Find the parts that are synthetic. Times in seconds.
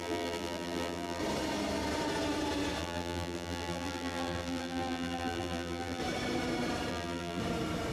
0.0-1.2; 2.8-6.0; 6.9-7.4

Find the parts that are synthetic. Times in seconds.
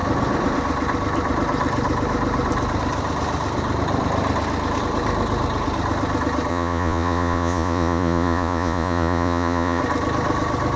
6.5-9.8